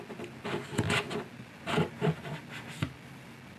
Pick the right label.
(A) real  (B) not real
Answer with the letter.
A